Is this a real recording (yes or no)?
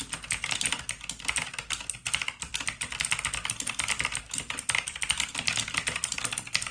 yes